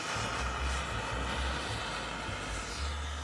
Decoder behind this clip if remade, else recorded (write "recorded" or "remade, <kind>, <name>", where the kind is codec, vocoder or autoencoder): recorded